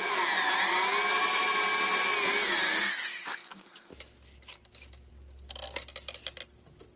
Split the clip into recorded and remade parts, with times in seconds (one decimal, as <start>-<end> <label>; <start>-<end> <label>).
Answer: 0.0-7.0 recorded